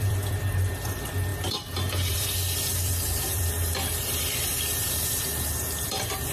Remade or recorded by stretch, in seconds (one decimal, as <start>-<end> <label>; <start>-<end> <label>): 0.0-6.3 remade

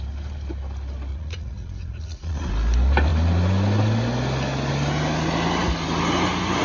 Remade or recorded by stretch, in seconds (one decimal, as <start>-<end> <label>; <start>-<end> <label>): 0.0-1.1 recorded; 1.1-2.5 remade; 2.5-6.6 recorded